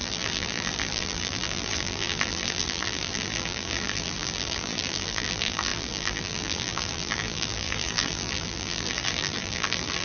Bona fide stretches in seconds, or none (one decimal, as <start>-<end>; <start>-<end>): none